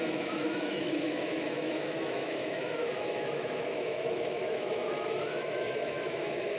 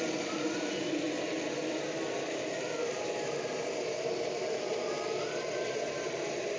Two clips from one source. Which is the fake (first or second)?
first